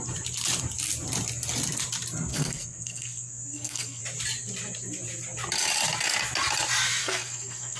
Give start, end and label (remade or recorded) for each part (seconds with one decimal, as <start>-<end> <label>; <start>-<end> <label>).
0.0-2.3 recorded; 2.3-4.0 remade; 4.0-7.0 recorded; 7.0-7.8 remade